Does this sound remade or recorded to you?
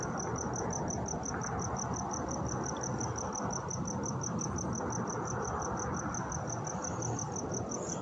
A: recorded